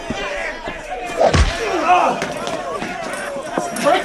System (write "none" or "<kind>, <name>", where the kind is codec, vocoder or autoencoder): none